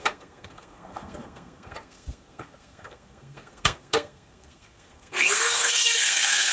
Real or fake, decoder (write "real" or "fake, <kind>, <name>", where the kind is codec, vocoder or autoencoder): fake, codec, SNAC